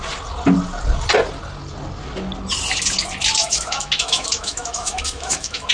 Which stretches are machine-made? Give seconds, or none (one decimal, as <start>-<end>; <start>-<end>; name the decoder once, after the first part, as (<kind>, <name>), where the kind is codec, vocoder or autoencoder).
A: 3.4-5.7 (autoencoder, DAC-VAE)